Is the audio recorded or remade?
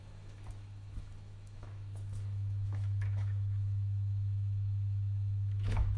remade